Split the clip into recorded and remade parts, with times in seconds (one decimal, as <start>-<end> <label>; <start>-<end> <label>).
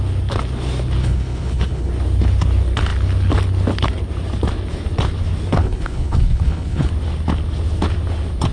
0.0-1.0 recorded; 1.0-1.9 remade; 1.9-5.6 recorded; 5.6-6.9 remade; 6.9-8.5 recorded